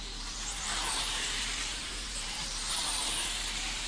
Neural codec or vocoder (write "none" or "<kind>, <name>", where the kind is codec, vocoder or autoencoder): vocoder, BigVGAN v2